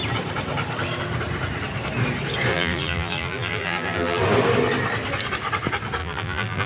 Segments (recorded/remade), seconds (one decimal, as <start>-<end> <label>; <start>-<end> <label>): 0.0-2.5 recorded; 2.5-4.2 remade; 4.2-6.0 recorded; 6.0-6.7 remade